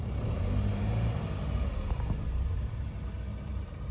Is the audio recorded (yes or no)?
no